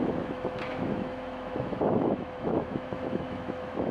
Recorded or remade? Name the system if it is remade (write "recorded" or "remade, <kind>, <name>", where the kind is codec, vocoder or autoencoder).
remade, autoencoder, DAC-VAE